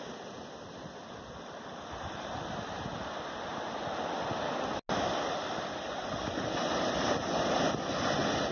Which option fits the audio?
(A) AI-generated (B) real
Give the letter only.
B